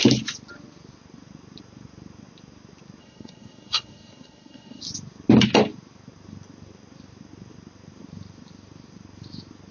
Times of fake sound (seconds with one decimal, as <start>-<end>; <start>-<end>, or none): 3.0-4.8